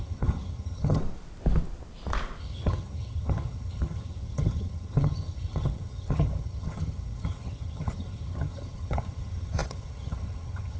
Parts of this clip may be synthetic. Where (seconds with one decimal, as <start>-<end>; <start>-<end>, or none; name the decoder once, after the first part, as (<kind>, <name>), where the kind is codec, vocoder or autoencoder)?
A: 0.0-1.0 (vocoder, HiFi-GAN); 2.4-10.8